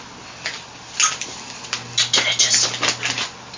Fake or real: real